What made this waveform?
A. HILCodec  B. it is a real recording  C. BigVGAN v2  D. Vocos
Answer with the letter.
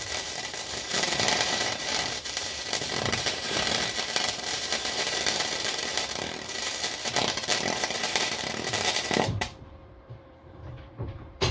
C